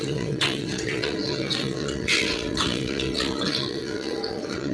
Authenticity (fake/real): fake